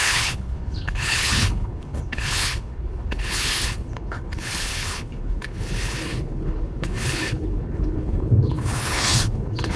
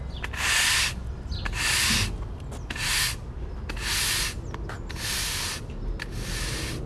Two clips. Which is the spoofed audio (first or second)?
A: first